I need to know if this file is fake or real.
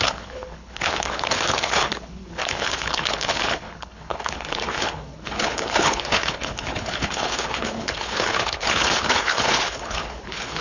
fake